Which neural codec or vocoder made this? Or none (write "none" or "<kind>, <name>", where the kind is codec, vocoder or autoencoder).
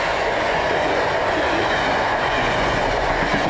vocoder, Vocos